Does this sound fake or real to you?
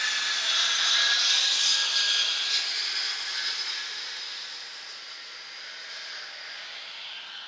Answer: real